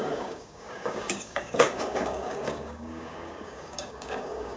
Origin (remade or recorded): remade